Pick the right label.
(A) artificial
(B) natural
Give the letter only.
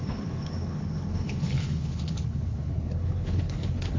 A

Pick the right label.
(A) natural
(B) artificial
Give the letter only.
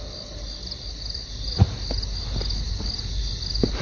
A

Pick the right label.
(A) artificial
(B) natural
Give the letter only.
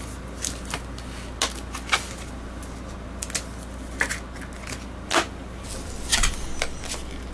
B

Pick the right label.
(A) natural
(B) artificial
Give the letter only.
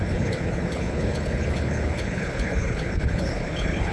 B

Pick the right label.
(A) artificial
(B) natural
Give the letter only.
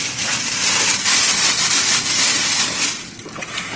B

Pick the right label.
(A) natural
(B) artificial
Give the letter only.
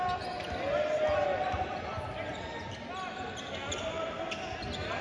A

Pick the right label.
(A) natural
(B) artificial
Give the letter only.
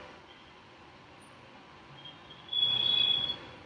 B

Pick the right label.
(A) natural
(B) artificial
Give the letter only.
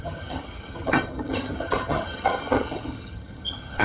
B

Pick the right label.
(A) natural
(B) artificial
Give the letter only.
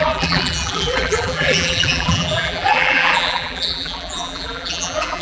B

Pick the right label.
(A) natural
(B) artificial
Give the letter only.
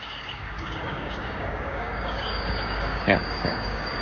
B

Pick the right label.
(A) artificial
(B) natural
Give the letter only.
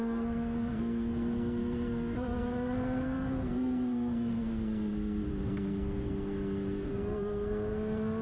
A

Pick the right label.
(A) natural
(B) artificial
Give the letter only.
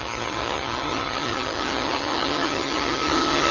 B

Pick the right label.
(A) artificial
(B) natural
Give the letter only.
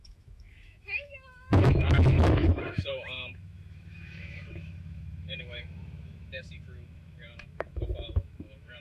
A